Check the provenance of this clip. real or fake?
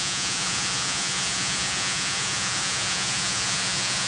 fake